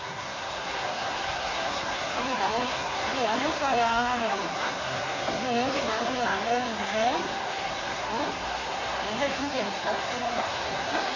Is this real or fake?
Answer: fake